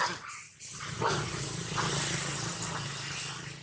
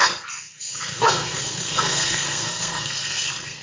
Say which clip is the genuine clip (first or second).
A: first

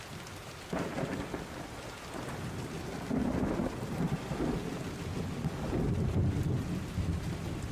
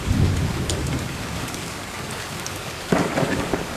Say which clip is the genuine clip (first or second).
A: first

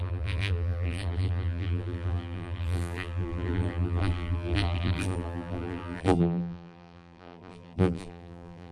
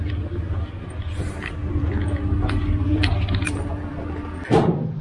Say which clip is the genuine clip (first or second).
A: second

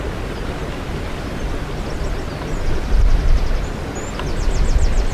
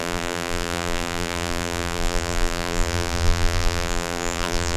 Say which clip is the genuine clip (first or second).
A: first